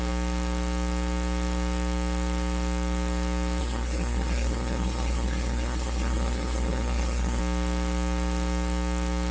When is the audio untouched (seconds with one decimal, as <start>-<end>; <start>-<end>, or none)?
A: 0.0-3.6; 7.4-9.3